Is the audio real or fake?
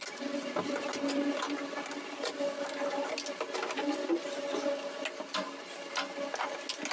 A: real